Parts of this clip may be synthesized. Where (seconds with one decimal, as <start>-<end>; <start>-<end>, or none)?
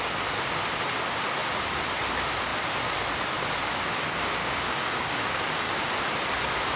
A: 4.4-5.9